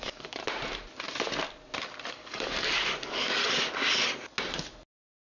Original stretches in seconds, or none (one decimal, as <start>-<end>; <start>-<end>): 0.4-2.1; 3.4-5.2